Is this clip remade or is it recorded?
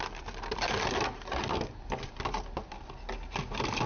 recorded